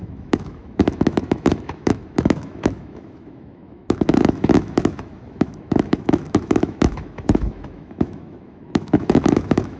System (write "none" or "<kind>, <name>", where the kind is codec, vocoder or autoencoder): autoencoder, DAC-VAE